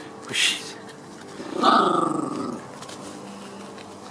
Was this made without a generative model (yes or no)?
yes